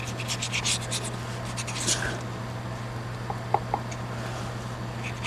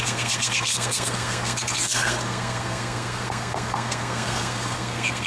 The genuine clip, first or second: first